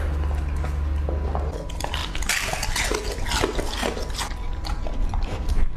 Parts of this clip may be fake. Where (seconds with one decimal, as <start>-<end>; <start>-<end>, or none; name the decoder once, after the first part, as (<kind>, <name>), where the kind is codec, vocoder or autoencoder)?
none